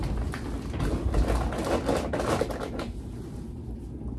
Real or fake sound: real